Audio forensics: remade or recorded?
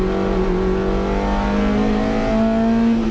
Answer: recorded